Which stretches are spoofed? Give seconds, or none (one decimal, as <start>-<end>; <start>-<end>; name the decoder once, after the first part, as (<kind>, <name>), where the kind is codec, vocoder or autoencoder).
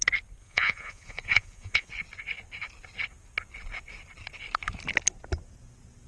0.4-1.9 (vocoder, Vocos)